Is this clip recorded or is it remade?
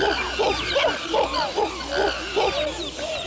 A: recorded